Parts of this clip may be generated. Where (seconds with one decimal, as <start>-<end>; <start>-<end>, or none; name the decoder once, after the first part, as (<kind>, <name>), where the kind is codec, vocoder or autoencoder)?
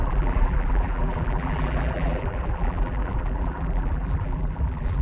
0.0-5.0 (vocoder, BigVGAN v2)